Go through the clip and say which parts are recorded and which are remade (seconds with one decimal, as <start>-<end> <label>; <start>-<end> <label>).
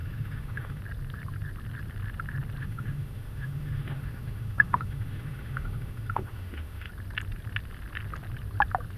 0.0-0.8 remade; 0.8-2.6 recorded; 2.6-6.9 remade; 6.9-9.0 recorded